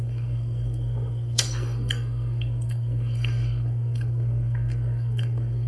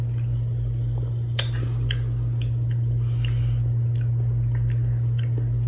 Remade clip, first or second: first